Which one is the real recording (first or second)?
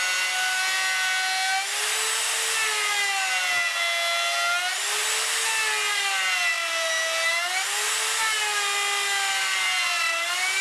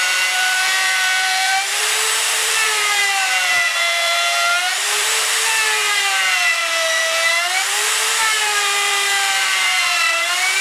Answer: first